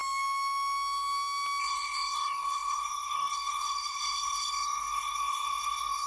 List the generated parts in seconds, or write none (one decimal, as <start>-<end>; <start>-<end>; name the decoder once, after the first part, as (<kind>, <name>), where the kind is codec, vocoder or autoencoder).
1.6-6.1 (codec, SNAC)